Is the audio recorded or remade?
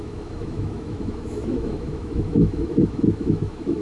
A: remade